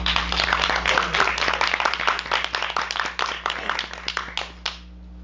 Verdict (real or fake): real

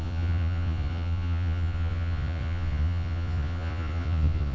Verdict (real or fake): fake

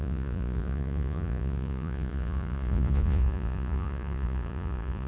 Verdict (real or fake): fake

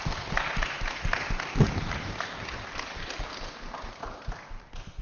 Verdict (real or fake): real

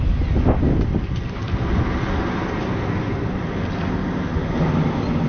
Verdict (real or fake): real